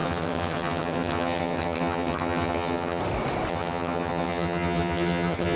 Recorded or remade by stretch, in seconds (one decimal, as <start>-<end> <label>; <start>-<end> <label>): 0.0-3.0 remade; 3.0-3.5 recorded; 3.5-5.5 remade